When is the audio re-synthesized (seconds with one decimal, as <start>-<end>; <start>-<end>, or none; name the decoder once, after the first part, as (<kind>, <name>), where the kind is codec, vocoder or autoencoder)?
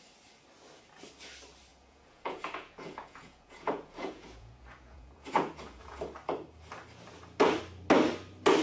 1.7-6.0 (vocoder, Vocos)